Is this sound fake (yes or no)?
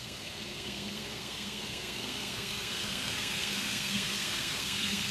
yes